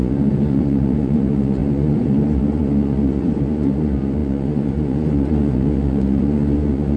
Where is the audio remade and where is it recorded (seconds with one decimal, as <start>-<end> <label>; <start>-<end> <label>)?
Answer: 0.0-7.0 remade